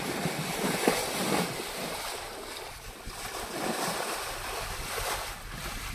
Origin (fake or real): real